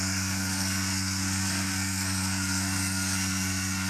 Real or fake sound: fake